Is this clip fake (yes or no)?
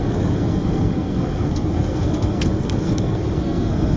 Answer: yes